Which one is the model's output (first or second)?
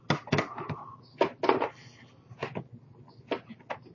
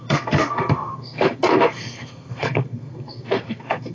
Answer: second